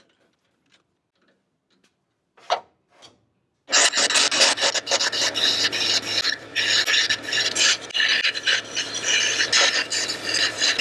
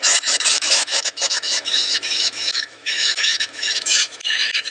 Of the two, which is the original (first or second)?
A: first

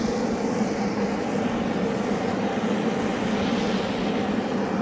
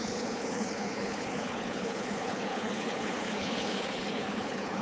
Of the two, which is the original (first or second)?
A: first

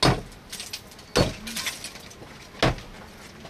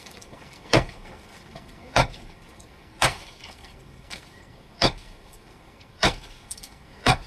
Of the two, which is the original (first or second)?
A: first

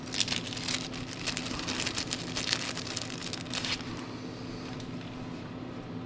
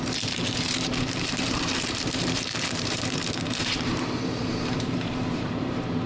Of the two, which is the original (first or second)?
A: first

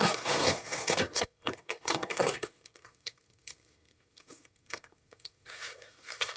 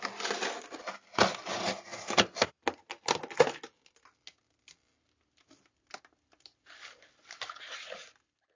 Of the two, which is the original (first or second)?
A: second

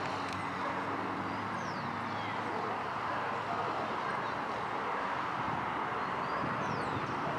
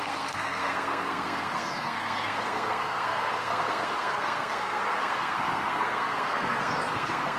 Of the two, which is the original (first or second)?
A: first